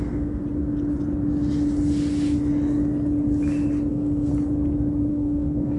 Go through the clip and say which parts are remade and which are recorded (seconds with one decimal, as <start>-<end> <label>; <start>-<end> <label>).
0.0-0.4 remade; 0.4-3.9 recorded; 3.9-4.3 remade; 4.3-5.1 recorded; 5.1-5.8 remade